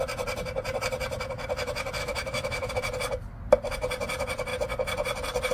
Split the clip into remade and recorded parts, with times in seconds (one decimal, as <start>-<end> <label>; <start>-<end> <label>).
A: 0.0-2.0 recorded; 2.0-2.7 remade; 2.7-5.5 recorded